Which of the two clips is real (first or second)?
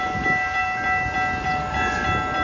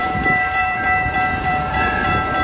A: first